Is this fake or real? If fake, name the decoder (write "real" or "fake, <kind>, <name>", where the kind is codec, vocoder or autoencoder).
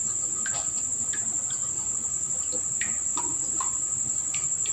real